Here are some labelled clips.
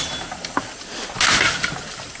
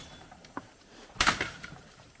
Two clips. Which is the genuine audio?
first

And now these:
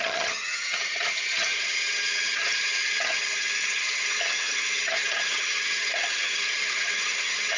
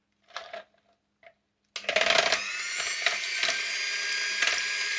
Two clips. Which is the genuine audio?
second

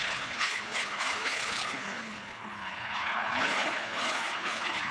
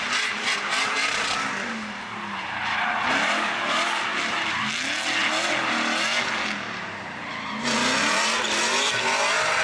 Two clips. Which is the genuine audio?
second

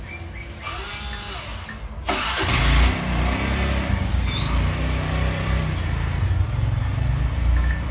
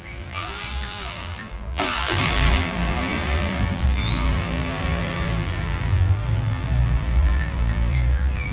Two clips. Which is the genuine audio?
first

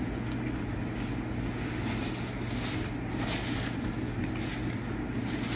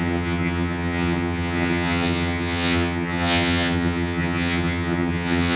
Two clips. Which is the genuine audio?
first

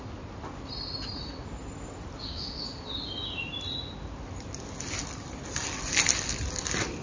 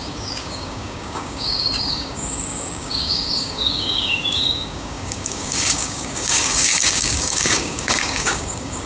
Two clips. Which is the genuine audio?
first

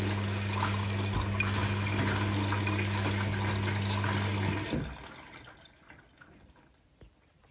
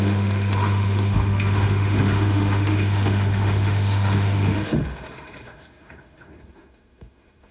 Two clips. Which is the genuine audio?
first